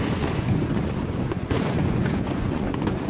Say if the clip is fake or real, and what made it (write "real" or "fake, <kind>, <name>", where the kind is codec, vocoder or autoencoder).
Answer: fake, vocoder, Vocos